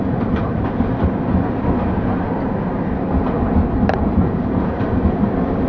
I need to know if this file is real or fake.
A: real